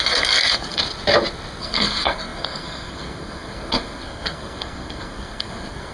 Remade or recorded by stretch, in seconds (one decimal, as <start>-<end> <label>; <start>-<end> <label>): 0.0-0.8 remade; 0.8-1.6 recorded; 1.6-5.9 remade

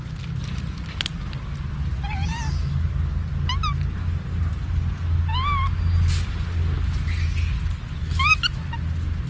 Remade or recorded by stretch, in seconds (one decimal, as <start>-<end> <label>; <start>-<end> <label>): 0.0-2.3 recorded; 2.3-2.9 remade; 2.9-9.3 recorded

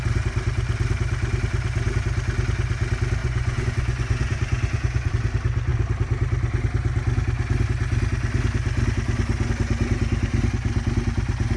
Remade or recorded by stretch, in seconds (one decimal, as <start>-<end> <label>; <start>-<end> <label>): 0.0-3.2 recorded; 3.2-5.1 remade; 5.1-11.6 recorded

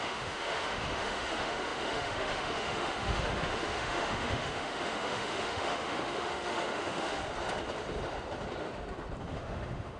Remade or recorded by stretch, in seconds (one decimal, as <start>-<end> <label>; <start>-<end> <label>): 0.0-7.2 remade; 7.2-9.2 recorded; 9.2-10.0 remade

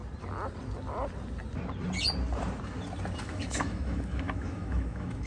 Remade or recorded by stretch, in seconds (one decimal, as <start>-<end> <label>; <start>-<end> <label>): 0.0-3.2 recorded; 3.2-5.3 remade

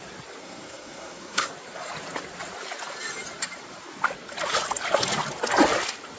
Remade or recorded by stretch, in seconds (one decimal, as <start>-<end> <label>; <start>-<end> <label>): 0.0-0.4 recorded; 0.4-1.5 remade; 1.5-6.2 recorded

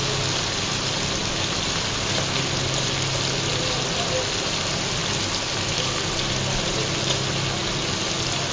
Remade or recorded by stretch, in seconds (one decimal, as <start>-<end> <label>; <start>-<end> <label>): 0.0-8.5 recorded

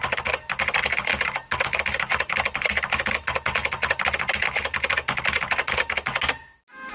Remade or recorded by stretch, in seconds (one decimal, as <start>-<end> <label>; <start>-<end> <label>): 0.0-6.9 recorded